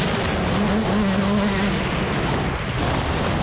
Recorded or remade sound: recorded